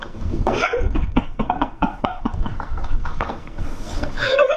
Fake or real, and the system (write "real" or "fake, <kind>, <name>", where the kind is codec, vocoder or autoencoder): fake, codec, SNAC